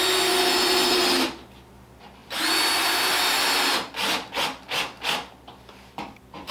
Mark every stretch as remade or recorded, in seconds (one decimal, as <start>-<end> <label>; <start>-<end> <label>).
0.0-6.5 recorded